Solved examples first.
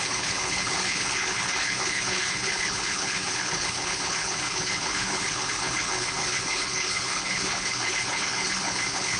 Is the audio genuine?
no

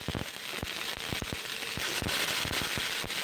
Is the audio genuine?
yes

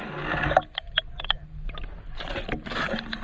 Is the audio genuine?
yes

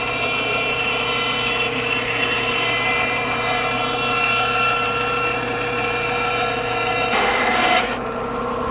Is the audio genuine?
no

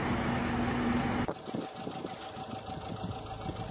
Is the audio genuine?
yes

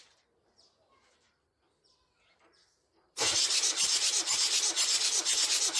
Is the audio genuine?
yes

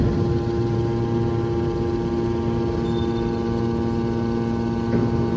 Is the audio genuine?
yes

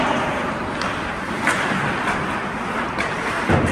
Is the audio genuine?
yes